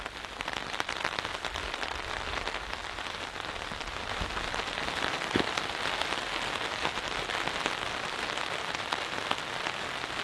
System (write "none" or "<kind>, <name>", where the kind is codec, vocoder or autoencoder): none